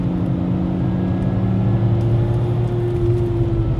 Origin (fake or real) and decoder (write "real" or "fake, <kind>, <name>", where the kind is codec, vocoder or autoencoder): real